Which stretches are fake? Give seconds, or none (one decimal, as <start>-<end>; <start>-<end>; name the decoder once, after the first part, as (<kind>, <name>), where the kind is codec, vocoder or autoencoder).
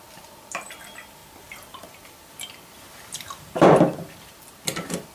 1.2-4.3 (vocoder, BigVGAN v2)